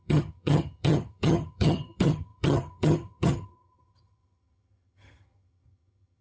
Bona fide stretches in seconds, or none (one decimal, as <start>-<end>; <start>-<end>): none